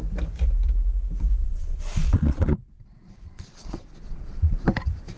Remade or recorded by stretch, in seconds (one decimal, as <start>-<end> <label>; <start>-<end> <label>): 0.0-1.4 recorded; 1.4-4.5 remade; 4.5-5.2 recorded